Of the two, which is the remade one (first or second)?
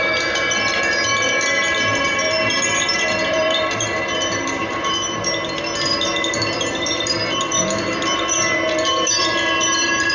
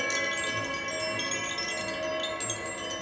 first